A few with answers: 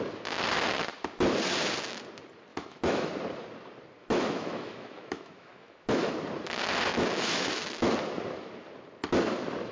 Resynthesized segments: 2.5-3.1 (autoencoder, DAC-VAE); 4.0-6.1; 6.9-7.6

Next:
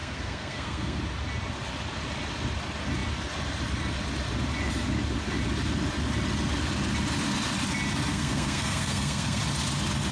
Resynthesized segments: 0.0-1.0 (codec, SNAC); 8.1-9.4

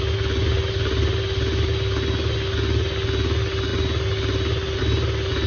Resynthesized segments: none

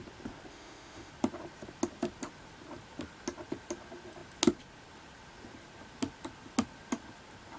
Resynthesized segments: 0.5-1.1 (autoencoder, DAC-VAE)

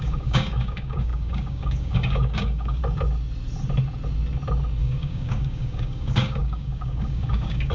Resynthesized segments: 0.0-2.8 (codec, DAC); 4.8-7.7